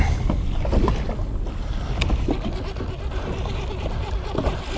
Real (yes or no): yes